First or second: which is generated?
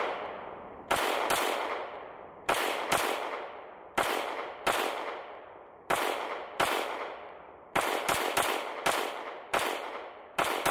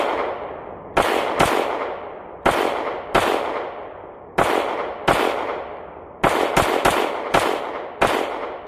first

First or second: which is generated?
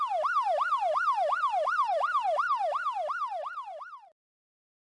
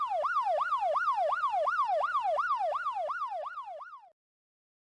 first